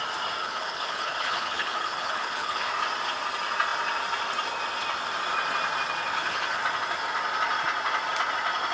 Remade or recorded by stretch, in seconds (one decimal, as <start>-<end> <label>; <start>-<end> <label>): 0.0-0.4 recorded; 0.4-2.7 remade; 2.7-6.1 recorded; 6.1-6.6 remade; 6.6-8.7 recorded